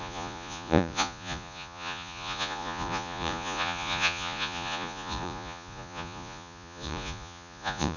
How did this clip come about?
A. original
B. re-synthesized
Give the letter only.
B